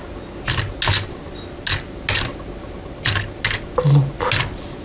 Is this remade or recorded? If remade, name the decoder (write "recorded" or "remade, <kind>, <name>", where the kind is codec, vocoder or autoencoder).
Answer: recorded